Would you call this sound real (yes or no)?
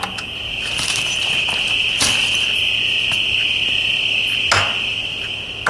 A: yes